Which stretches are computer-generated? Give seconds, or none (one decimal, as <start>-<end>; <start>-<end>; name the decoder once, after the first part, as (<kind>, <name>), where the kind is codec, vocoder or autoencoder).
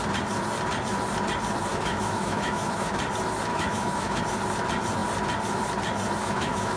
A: 1.7-2.9 (autoencoder, DAC-VAE); 3.5-4.2; 6.2-6.8